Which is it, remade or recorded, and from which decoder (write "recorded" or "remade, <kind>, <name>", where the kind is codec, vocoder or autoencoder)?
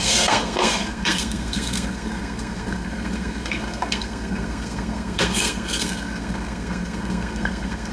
remade, codec, SNAC